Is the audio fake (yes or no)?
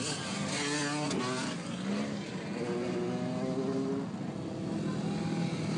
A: no